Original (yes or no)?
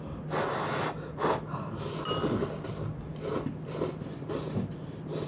yes